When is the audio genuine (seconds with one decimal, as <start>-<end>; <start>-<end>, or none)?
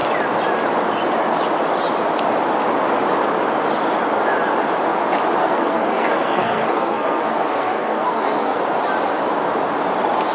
0.0-5.4; 8.6-10.3